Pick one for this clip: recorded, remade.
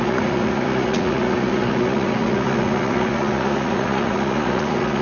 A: remade